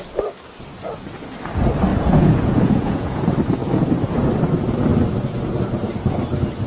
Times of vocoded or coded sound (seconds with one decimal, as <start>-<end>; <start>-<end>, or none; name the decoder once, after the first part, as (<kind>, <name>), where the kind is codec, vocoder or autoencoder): 1.9-3.2 (vocoder, Vocos)